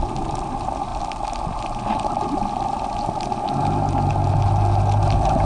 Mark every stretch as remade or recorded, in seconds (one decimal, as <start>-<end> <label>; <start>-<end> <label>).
0.0-5.5 recorded